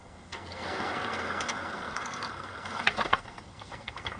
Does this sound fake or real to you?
fake